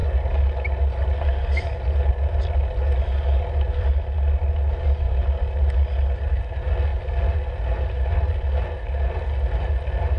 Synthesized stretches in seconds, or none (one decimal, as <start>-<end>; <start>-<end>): none